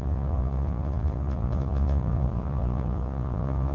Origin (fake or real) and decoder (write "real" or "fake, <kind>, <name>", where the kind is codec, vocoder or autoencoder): fake, vocoder, Vocos